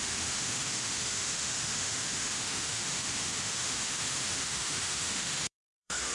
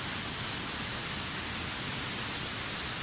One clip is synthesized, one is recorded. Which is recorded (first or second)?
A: second